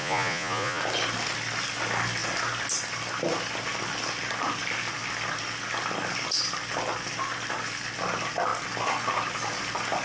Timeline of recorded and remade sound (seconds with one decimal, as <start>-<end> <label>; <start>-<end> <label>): 0.0-0.8 remade; 0.8-10.0 recorded